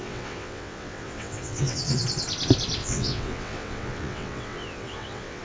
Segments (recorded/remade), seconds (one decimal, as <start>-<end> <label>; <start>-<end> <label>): 0.0-2.0 remade; 2.0-2.8 recorded; 2.8-5.4 remade